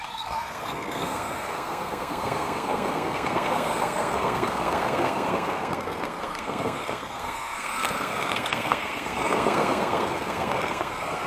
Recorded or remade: remade